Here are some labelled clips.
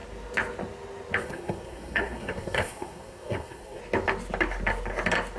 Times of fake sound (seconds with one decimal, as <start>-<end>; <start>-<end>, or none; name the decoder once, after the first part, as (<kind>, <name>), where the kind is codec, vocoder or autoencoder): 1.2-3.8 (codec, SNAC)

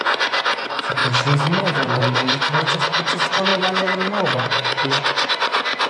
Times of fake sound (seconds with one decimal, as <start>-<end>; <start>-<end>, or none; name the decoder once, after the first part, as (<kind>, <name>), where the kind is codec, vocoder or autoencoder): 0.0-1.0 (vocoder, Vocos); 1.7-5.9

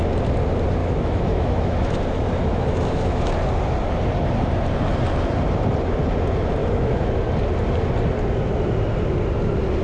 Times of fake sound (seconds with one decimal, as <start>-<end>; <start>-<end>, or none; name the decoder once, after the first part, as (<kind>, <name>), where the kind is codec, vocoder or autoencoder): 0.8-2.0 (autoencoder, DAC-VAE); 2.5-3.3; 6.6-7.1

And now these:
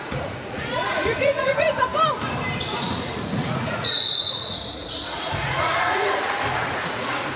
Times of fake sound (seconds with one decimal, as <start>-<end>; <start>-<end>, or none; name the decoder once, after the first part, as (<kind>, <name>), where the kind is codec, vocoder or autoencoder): 0.0-1.9 (vocoder, Vocos); 2.9-7.4

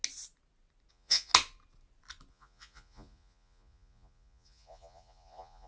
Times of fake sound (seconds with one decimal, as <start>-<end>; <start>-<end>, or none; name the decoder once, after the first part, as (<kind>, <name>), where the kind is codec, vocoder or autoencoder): 0.9-1.3 (vocoder, Vocos); 2.3-5.7

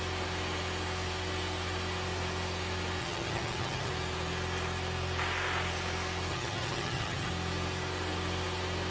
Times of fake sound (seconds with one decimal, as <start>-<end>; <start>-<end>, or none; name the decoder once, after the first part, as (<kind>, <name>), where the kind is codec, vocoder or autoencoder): 3.0-3.9 (vocoder, HiFi-GAN); 6.3-7.3